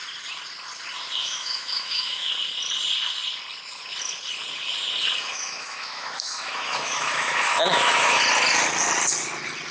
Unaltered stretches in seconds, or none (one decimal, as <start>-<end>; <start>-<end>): 0.0-1.2; 2.3-5.3; 8.2-9.7